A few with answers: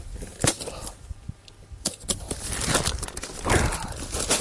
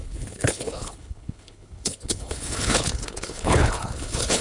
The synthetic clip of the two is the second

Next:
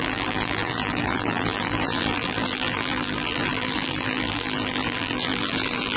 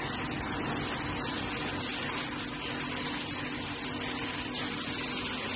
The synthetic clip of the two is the first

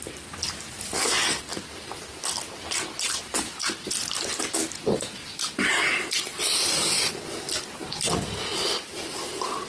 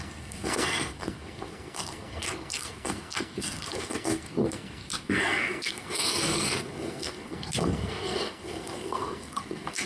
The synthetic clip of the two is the second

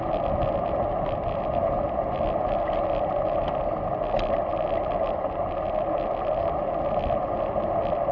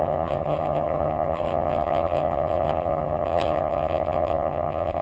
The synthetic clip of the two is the second